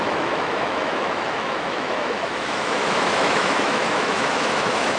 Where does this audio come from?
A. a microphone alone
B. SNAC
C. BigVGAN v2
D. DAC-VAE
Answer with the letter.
D